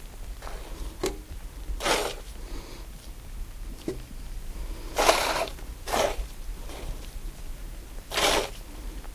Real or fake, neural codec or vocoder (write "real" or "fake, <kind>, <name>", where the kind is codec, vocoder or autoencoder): fake, vocoder, BigVGAN v2